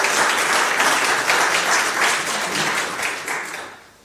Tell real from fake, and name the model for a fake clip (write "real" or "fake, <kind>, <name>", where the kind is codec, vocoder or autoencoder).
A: real